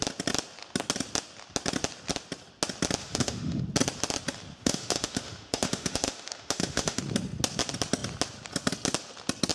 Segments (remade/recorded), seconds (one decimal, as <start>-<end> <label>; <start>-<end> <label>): 0.0-3.0 recorded; 3.0-3.6 remade; 3.6-4.6 recorded; 4.6-7.0 remade; 7.0-9.5 recorded